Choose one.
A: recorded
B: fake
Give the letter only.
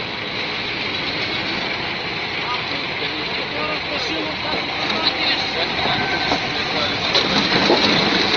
A